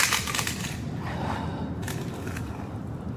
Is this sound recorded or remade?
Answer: recorded